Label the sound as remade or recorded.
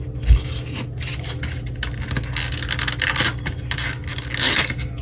recorded